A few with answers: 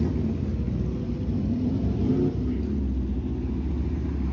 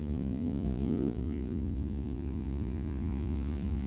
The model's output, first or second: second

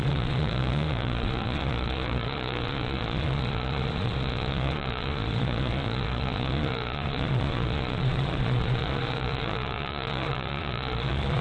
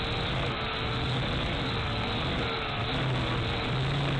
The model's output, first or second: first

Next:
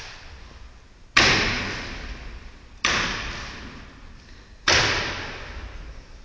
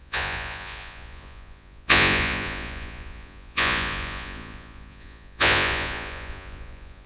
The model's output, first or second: second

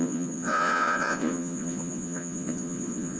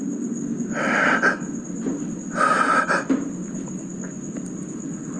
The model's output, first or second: first